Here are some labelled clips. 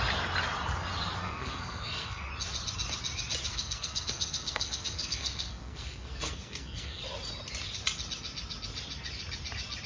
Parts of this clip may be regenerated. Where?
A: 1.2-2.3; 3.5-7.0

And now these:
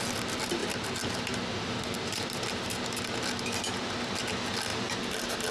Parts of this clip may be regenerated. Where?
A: none

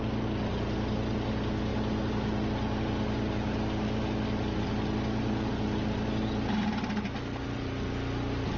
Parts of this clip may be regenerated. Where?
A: none

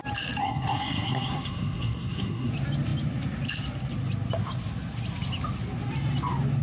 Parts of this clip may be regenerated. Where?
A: 0.4-2.5

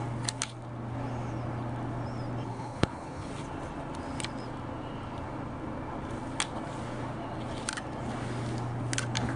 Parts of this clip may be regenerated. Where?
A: 2.5-3.3